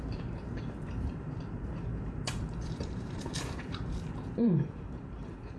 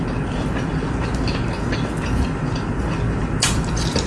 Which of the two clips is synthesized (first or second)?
first